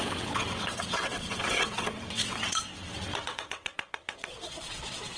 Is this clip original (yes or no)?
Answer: no